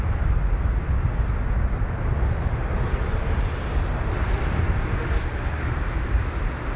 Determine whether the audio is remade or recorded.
recorded